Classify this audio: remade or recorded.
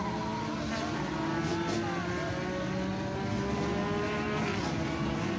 recorded